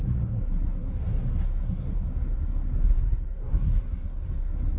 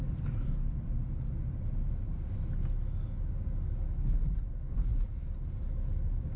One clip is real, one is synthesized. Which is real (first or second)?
second